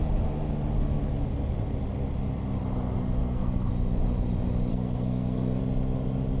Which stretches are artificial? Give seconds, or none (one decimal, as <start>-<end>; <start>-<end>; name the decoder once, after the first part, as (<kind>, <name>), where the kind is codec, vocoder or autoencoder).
3.2-3.7 (codec, SNAC); 4.7-5.6